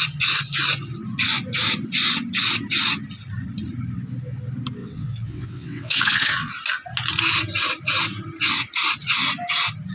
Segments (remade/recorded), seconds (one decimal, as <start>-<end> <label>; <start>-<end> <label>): 0.0-4.8 recorded; 4.8-6.5 remade; 6.5-9.9 recorded